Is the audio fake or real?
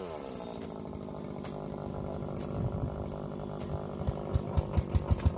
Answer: real